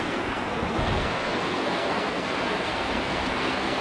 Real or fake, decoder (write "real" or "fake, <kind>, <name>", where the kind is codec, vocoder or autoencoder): fake, codec, SNAC